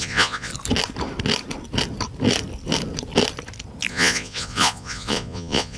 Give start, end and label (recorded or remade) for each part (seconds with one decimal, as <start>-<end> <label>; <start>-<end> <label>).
0.0-0.5 remade; 0.5-3.9 recorded; 3.9-5.8 remade